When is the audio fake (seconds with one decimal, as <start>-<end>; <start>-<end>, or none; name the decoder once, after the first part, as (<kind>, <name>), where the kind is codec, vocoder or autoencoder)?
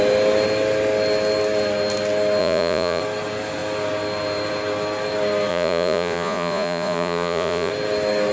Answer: 2.4-3.0 (vocoder, Vocos); 5.5-7.7